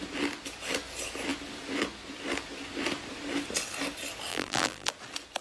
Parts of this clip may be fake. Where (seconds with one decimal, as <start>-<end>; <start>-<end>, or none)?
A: 4.3-4.9